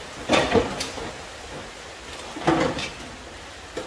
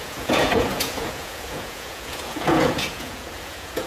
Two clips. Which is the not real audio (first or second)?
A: second